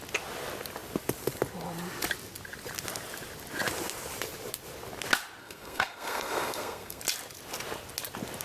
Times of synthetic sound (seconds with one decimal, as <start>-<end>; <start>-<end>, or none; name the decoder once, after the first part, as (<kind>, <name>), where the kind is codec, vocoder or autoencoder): 5.4-7.0 (codec, SNAC)